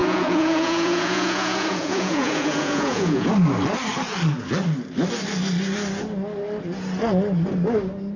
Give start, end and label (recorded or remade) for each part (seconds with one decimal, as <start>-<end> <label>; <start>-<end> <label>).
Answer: 0.0-3.3 remade; 3.3-8.2 recorded